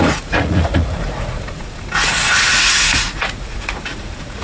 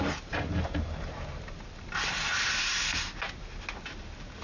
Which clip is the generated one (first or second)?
first